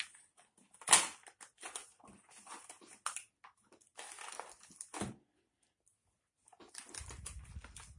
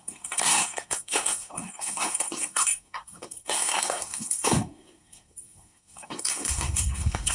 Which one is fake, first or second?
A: second